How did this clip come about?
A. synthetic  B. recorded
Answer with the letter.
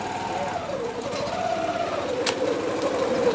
B